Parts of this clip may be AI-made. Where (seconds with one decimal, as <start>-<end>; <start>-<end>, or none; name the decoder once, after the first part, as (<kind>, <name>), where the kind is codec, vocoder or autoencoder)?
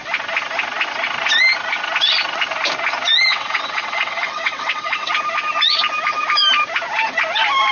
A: 3.3-5.1 (vocoder, WaveNeXt)